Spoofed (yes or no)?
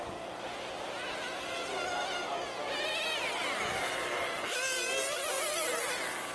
no